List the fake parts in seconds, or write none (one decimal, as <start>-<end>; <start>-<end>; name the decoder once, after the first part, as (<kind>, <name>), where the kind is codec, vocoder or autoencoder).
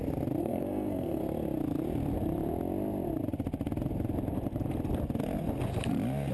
0.4-1.2 (codec, SNAC)